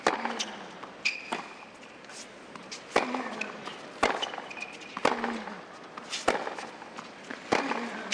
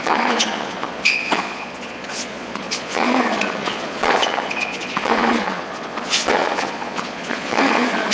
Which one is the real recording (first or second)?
first